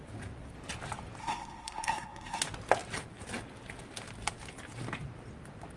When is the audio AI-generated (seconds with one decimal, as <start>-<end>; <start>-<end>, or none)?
1.2-2.4